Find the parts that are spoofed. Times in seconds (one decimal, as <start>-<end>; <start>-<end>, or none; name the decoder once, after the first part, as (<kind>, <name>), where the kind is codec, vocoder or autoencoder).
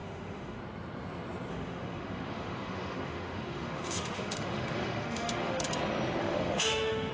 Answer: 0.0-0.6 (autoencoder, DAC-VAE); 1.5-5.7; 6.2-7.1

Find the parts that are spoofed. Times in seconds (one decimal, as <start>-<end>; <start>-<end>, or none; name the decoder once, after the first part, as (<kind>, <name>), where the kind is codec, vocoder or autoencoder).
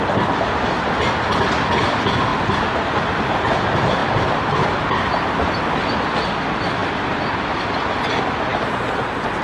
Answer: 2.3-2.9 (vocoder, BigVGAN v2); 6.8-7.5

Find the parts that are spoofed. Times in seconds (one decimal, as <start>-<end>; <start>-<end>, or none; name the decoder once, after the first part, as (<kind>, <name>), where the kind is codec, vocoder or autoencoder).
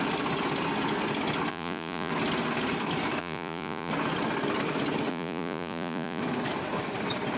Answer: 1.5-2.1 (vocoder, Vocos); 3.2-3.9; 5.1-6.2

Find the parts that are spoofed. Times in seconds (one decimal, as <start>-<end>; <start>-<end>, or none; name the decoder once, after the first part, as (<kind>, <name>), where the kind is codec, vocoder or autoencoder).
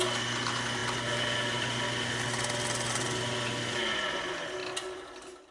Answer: none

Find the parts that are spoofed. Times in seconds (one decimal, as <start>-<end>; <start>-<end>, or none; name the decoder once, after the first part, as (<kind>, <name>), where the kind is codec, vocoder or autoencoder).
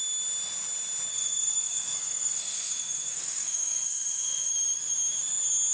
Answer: 1.1-4.5 (codec, SNAC)